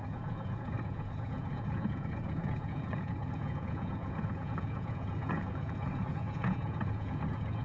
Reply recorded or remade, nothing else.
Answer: remade